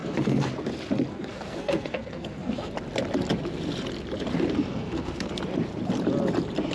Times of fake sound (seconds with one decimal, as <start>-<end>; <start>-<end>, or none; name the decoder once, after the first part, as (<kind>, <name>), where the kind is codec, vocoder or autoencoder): 0.0-0.5 (codec, SNAC); 1.1-2.7; 4.7-5.3